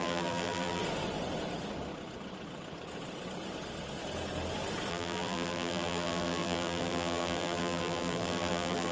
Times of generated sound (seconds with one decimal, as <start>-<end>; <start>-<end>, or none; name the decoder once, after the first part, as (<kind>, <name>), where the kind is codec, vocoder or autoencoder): 0.0-0.8 (vocoder, BigVGAN v2); 4.9-8.9